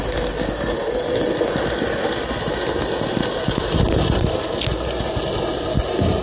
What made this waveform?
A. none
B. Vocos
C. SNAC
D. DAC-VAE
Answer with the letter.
A